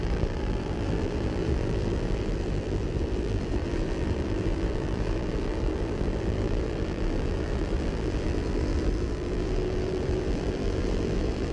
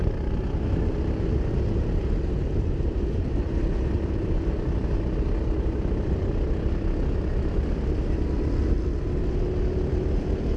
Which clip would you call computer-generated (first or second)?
first